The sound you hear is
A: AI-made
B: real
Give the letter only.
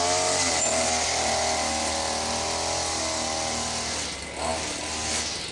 B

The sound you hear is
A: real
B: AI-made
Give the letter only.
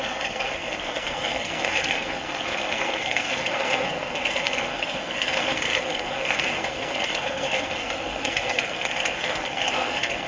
B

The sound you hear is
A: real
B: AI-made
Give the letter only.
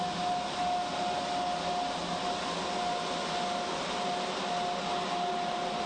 A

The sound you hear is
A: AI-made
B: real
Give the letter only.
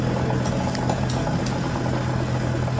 B